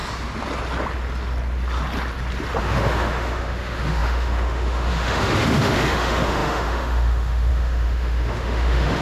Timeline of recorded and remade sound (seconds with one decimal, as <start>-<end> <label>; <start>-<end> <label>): 0.0-2.6 recorded; 2.6-9.0 remade